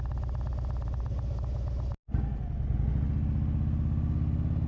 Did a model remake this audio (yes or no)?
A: no